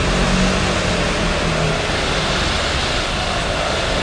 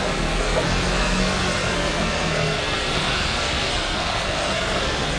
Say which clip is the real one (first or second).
first